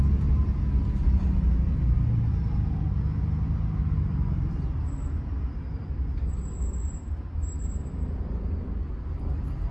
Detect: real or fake real